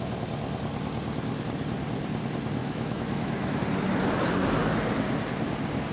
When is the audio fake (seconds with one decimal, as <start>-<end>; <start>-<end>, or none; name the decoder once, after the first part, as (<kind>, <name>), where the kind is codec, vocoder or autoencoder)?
2.6-3.6 (autoencoder, DAC-VAE)